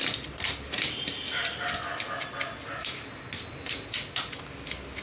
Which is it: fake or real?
real